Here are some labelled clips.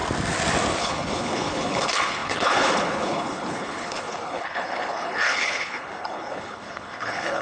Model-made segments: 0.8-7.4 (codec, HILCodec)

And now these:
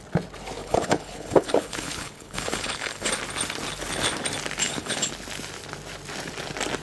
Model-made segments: 0.6-3.1 (codec, HILCodec); 4.6-5.1